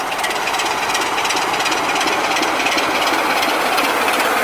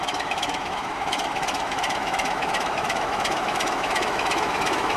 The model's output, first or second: second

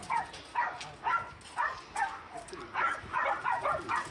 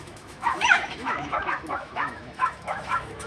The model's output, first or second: second